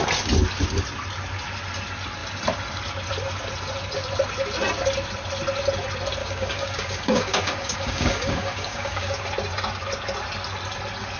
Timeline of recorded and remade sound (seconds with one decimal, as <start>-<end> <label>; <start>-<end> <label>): 0.0-6.2 recorded; 6.2-9.2 remade; 9.2-11.2 recorded